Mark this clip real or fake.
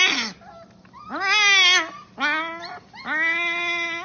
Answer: real